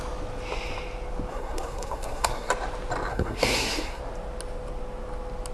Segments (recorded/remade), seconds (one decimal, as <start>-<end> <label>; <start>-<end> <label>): 0.0-1.3 recorded; 1.3-2.5 remade; 2.5-3.1 recorded; 3.1-4.0 remade; 4.0-5.5 recorded